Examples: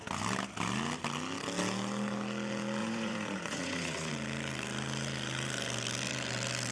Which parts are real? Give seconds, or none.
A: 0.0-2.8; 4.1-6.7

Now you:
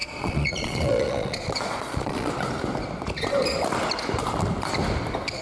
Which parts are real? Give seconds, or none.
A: 2.3-5.4